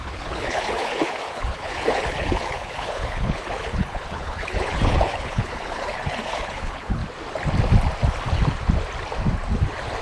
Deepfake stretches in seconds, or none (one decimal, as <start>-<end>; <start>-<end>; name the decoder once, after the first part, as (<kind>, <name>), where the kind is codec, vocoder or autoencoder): 0.0-7.0 (codec, HILCodec)